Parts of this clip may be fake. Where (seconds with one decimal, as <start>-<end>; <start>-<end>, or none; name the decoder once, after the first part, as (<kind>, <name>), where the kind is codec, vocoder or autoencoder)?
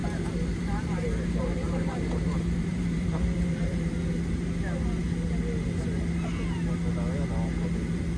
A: 0.0-3.9 (vocoder, BigVGAN v2)